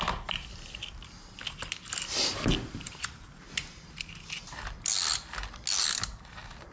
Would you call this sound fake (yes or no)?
no